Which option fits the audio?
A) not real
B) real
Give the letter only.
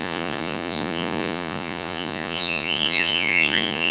A